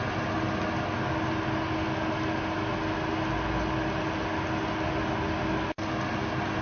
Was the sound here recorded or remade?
recorded